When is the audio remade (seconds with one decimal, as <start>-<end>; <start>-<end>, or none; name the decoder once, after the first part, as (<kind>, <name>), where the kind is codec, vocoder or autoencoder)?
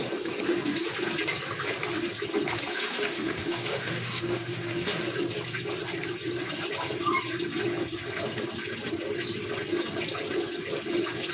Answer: 2.7-5.0 (autoencoder, DAC-VAE)